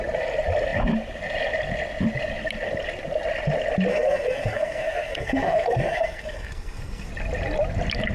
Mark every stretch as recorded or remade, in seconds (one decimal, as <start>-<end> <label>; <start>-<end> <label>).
0.0-3.9 recorded; 3.9-7.1 remade; 7.1-8.1 recorded